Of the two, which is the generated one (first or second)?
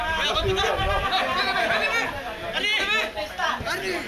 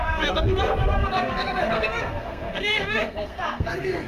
second